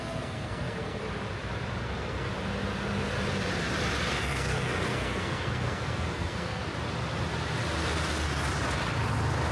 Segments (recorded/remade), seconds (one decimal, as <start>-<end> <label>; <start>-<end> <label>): 0.0-1.0 remade; 1.0-1.8 recorded; 1.8-2.3 remade; 2.3-4.1 recorded; 4.1-6.6 remade; 6.6-9.5 recorded